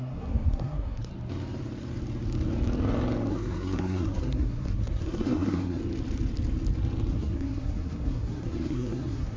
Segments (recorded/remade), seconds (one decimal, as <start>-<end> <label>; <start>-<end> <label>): 0.0-1.1 remade; 1.1-3.3 recorded; 3.3-5.8 remade; 5.8-7.1 recorded; 7.1-9.4 remade